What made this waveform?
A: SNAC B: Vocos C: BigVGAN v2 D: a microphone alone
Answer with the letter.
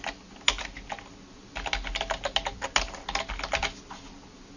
D